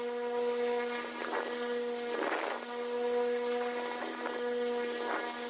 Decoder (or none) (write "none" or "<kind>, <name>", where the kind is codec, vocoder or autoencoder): none